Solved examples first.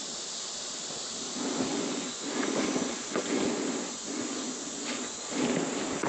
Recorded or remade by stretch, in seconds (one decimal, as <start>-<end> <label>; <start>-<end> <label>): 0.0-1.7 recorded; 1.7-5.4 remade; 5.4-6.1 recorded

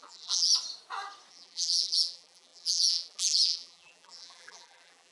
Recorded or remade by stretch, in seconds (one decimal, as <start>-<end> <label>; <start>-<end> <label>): 0.0-0.5 remade; 0.5-1.3 recorded; 1.3-5.1 remade

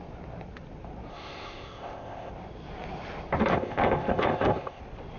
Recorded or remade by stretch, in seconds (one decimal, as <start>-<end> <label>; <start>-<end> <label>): 0.0-1.1 recorded; 1.1-2.3 remade; 2.3-3.5 recorded; 3.5-4.8 remade; 4.8-5.2 recorded

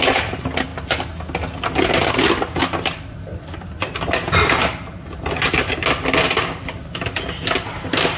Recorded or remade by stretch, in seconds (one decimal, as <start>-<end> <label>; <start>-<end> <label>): 0.0-8.2 recorded

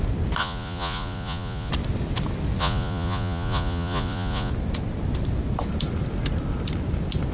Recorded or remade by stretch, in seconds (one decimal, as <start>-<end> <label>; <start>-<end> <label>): 0.0-0.4 recorded; 0.4-1.7 remade; 1.7-2.6 recorded; 2.6-4.5 remade; 4.5-7.3 recorded

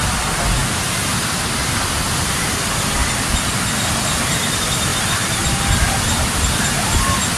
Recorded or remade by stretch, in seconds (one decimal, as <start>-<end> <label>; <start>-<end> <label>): 0.0-7.4 recorded

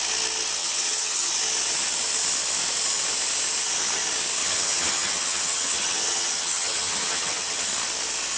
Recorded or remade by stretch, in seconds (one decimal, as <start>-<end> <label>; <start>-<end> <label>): 0.0-0.6 recorded; 0.6-1.3 remade; 1.3-4.4 recorded; 4.4-7.7 remade; 7.7-8.4 recorded

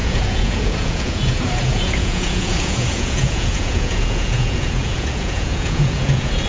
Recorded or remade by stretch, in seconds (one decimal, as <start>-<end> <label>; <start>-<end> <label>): 0.0-6.5 remade